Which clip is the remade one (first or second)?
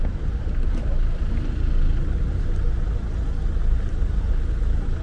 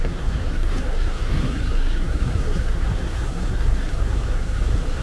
second